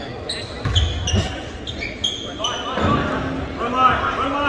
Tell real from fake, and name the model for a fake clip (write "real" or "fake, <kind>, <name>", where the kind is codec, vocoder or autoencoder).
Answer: real